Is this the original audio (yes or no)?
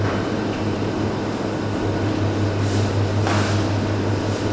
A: yes